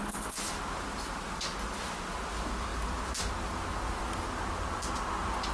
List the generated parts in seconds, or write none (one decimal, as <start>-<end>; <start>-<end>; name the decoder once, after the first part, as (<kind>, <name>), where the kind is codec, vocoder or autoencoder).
none